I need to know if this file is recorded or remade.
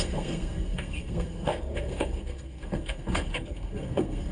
remade